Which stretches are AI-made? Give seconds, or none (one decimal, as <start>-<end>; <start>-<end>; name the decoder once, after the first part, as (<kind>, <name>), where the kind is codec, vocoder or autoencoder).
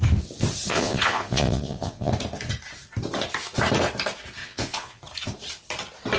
0.7-2.1 (vocoder, Vocos); 4.4-5.0